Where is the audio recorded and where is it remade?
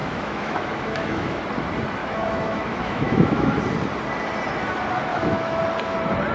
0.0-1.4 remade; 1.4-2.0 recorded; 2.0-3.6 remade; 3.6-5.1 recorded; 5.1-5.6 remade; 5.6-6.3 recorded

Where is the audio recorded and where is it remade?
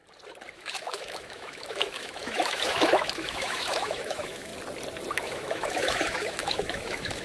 0.0-0.5 recorded; 0.5-4.5 remade; 4.5-5.1 recorded; 5.1-7.2 remade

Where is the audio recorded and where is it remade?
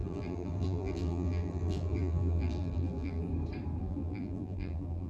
0.0-3.3 remade; 3.3-3.8 recorded; 3.8-5.1 remade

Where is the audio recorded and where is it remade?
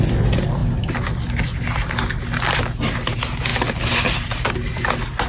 0.0-5.3 recorded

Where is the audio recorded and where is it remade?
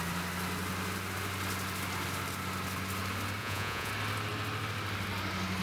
0.0-3.4 recorded; 3.4-3.9 remade; 3.9-5.6 recorded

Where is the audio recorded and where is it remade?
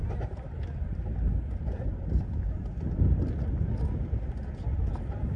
0.0-5.4 recorded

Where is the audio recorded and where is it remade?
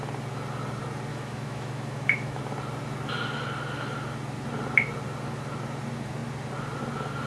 0.0-1.1 recorded; 1.1-2.4 remade; 2.4-7.3 recorded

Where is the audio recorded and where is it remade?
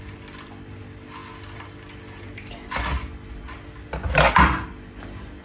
0.0-5.4 recorded